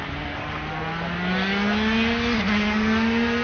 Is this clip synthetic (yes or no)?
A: no